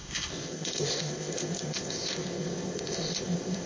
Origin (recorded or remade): remade